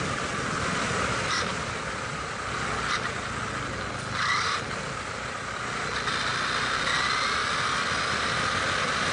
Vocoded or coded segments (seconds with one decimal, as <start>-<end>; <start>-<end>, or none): 0.7-2.8